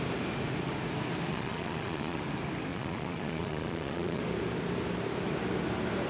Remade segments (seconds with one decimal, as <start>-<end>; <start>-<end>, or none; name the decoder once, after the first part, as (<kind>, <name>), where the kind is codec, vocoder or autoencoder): 1.3-2.2 (vocoder, Vocos); 2.7-4.2